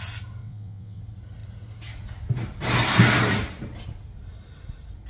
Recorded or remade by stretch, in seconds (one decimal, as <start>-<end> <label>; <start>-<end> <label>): 0.0-0.4 recorded; 0.4-1.0 remade; 1.0-5.1 recorded